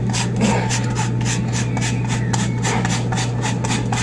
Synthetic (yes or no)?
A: no